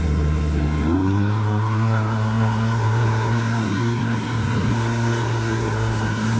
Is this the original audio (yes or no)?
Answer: no